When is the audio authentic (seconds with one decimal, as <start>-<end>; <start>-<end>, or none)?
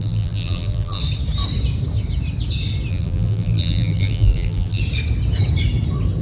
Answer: 1.0-2.9; 4.8-6.2